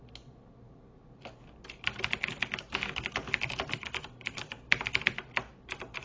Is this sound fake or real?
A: real